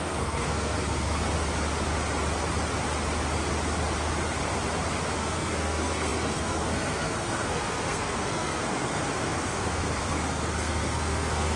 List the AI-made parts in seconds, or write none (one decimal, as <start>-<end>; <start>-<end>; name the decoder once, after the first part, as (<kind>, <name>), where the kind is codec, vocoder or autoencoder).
0.0-1.2 (codec, SNAC); 5.2-11.6